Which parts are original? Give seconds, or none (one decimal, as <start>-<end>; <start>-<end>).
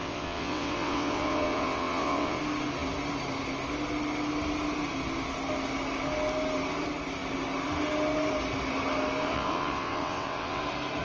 2.4-9.2; 10.6-11.0